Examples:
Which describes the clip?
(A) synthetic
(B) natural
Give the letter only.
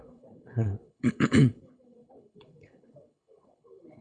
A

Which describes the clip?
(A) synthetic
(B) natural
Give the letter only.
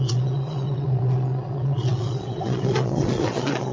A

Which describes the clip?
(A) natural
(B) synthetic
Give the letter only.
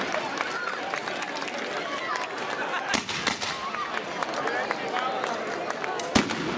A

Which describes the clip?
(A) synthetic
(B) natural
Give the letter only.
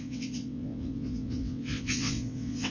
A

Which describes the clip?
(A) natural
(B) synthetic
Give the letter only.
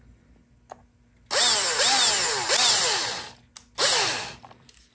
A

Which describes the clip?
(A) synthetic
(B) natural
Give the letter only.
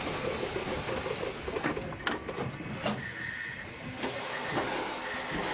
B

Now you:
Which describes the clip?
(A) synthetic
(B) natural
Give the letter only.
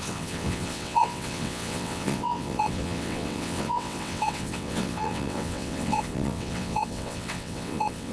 A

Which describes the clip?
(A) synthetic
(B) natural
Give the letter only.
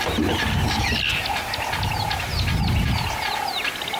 B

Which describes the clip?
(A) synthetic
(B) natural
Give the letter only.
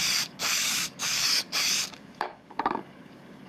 A